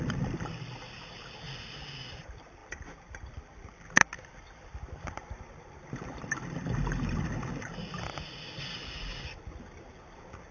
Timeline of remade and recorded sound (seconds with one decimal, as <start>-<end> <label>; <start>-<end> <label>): 0.0-10.5 recorded